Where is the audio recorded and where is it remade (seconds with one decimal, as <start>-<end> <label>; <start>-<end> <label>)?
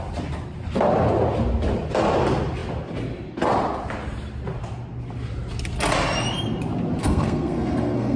0.0-7.0 recorded; 7.0-8.2 remade